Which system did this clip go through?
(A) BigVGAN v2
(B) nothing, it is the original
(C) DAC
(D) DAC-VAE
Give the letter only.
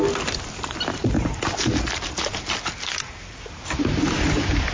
B